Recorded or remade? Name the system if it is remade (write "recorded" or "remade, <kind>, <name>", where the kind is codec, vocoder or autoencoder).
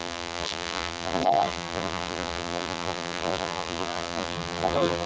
remade, vocoder, BigVGAN v2